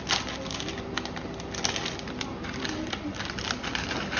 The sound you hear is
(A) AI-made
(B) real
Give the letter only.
B